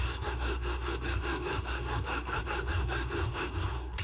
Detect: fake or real fake